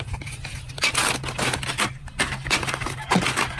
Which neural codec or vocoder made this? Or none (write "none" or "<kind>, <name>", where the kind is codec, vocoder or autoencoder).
none